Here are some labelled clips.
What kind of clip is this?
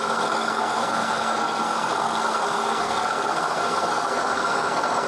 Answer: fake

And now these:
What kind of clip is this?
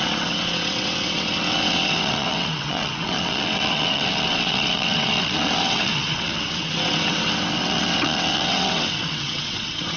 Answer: fake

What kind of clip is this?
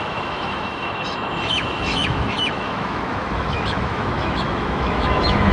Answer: fake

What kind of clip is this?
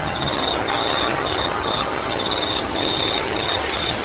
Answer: fake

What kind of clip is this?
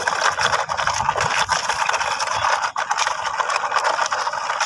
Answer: real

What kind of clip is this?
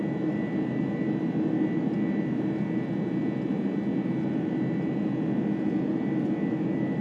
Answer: real